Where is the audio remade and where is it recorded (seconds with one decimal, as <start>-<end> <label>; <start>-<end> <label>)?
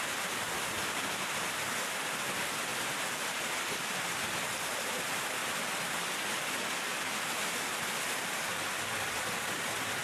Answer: 0.0-10.0 recorded